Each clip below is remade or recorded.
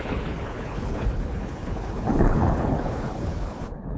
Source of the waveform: remade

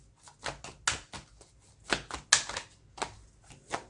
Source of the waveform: recorded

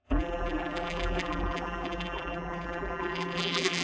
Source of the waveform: remade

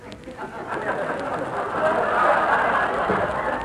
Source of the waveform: recorded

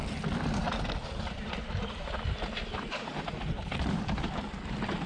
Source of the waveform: remade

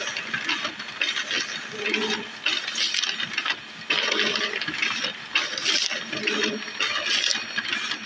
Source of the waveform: recorded